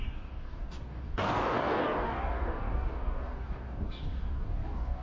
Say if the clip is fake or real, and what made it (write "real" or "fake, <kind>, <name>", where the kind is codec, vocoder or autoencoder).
fake, codec, DAC